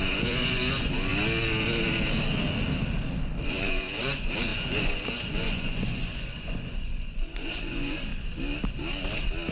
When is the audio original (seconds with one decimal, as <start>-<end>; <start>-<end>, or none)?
1.1-3.5; 8.1-9.5